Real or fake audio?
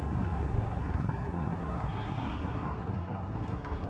fake